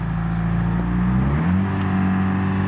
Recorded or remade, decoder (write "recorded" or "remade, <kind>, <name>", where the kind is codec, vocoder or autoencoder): recorded